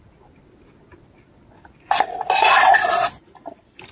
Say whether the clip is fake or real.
real